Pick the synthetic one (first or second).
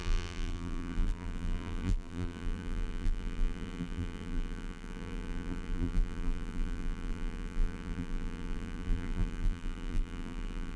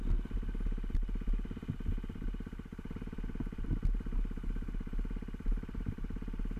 first